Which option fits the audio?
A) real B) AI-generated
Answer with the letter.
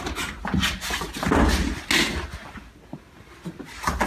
A